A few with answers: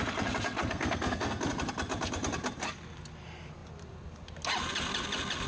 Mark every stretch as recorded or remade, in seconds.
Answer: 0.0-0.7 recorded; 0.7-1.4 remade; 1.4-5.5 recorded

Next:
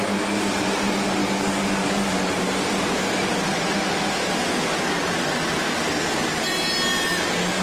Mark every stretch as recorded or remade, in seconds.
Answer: 0.0-1.2 recorded; 1.2-2.3 remade; 2.3-7.6 recorded

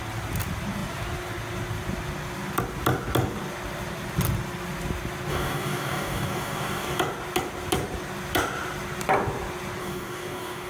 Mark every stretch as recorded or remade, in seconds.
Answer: 0.0-5.3 recorded; 5.3-7.0 remade; 7.0-9.8 recorded; 9.8-10.7 remade